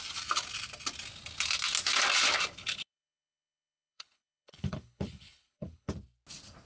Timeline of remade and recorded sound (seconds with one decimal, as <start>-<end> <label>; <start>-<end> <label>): 0.0-2.6 recorded; 2.6-5.9 remade; 5.9-6.7 recorded